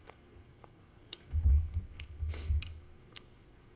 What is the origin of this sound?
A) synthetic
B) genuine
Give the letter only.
A